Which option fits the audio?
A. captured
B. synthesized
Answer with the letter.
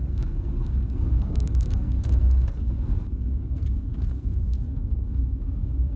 B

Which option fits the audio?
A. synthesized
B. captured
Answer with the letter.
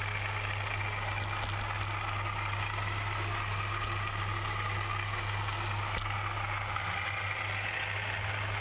B